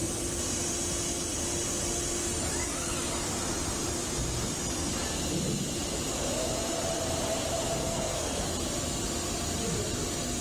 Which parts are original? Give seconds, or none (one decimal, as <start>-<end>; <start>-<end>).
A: 0.0-7.8; 8.5-10.4